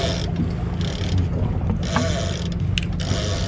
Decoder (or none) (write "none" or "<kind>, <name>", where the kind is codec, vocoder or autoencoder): none